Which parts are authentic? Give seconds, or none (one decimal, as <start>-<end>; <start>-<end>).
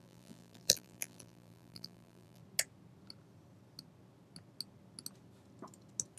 2.4-6.2